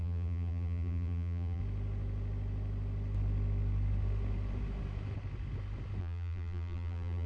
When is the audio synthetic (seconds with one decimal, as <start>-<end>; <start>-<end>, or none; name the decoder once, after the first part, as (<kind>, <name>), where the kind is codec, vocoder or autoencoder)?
0.0-1.6 (vocoder, BigVGAN v2); 6.0-7.3